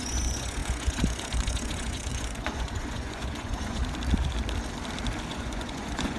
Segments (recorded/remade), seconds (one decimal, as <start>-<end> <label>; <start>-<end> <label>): 0.0-3.8 remade; 3.8-5.3 recorded; 5.3-6.2 remade